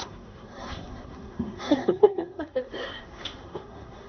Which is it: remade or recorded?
remade